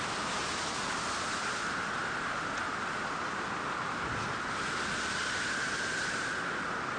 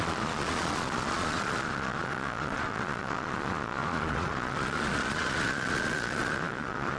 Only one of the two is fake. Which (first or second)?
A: second